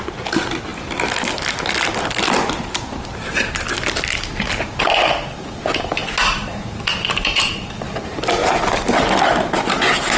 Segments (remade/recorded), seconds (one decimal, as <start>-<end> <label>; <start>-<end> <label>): 0.0-10.2 recorded